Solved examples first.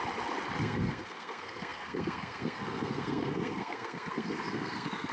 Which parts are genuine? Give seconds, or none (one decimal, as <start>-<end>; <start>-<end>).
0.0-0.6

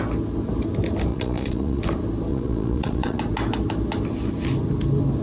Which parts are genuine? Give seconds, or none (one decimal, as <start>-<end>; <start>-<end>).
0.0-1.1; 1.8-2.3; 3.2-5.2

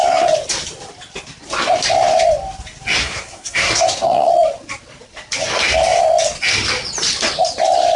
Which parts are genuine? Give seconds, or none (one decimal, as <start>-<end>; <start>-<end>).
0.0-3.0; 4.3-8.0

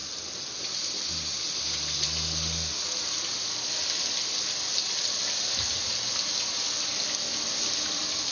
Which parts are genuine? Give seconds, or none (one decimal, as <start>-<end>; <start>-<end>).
0.0-8.3